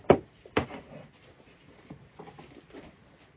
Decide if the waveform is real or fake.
real